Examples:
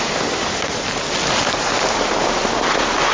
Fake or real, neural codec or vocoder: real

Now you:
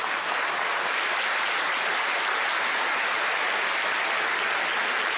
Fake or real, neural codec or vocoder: real